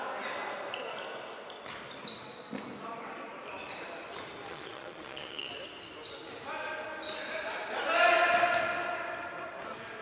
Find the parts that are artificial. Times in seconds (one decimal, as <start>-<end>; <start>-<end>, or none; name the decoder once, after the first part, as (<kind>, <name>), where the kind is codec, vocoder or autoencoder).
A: 4.5-5.5 (vocoder, Vocos)